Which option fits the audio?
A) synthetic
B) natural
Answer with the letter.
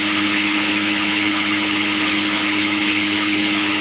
A